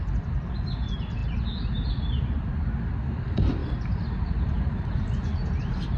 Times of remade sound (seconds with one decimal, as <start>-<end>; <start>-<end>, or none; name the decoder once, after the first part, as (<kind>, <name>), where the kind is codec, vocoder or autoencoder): none